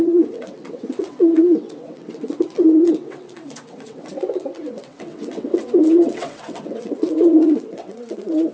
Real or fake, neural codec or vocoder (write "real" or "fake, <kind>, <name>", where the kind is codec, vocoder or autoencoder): fake, vocoder, WaveNeXt